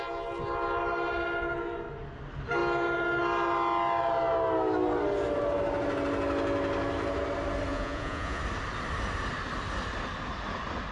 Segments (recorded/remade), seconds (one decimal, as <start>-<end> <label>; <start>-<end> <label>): 0.0-7.7 recorded; 7.7-8.4 remade; 8.4-10.9 recorded